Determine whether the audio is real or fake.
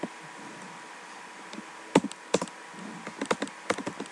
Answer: real